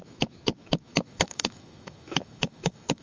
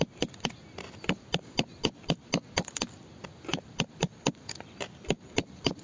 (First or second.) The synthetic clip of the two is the first